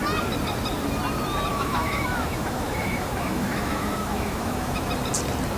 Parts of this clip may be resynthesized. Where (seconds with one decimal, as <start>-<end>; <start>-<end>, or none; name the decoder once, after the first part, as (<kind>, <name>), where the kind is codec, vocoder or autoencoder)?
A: 1.5-4.9 (autoencoder, DAC-VAE)